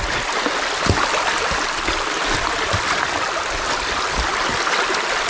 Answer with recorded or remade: recorded